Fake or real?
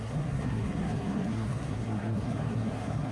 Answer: fake